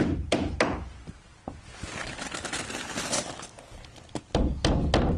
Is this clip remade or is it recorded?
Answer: recorded